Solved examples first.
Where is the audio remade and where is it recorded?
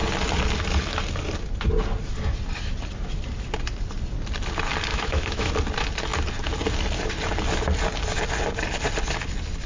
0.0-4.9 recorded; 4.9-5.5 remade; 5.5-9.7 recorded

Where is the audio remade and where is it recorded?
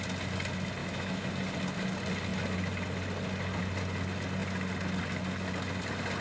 0.0-0.8 recorded; 0.8-1.3 remade; 1.3-6.2 recorded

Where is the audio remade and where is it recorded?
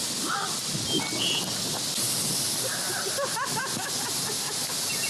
0.0-5.1 recorded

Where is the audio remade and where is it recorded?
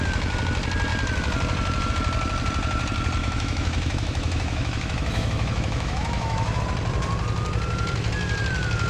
0.0-3.2 recorded; 3.2-6.6 remade; 6.6-8.9 recorded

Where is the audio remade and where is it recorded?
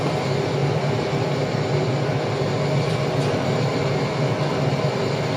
0.0-5.4 recorded